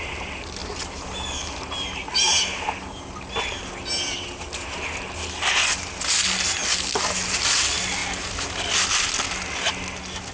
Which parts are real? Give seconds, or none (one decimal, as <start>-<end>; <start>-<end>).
0.0-0.6; 2.5-10.3